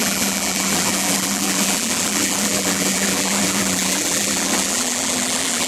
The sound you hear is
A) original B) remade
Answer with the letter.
B